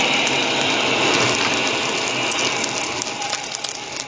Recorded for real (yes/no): yes